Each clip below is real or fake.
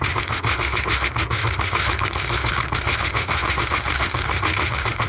fake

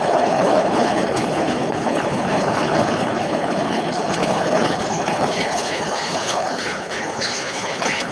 fake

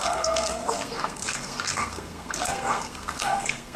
fake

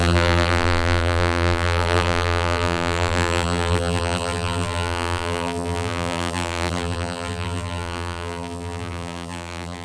fake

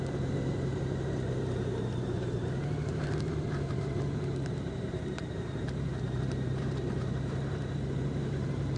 fake